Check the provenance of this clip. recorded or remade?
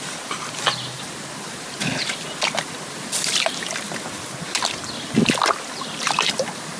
recorded